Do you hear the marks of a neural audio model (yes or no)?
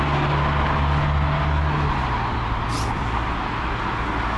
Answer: no